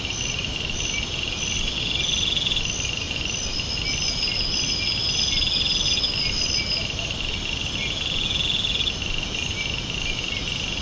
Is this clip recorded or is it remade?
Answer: recorded